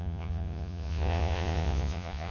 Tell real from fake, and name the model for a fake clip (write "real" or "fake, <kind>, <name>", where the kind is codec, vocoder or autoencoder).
fake, vocoder, Vocos